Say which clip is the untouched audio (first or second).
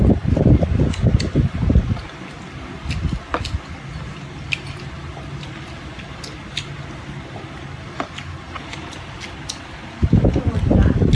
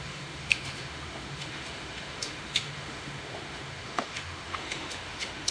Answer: first